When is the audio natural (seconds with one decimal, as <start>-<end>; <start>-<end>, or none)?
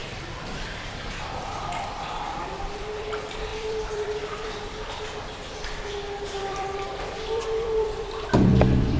0.0-1.2